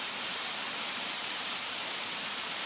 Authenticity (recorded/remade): remade